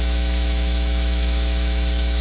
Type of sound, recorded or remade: remade